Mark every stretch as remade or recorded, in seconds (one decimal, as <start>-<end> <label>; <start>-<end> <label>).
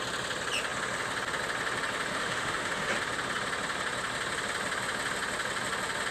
0.0-2.1 recorded; 2.1-2.9 remade; 2.9-6.1 recorded